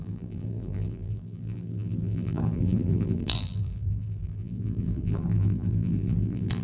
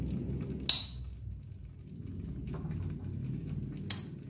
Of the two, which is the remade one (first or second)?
first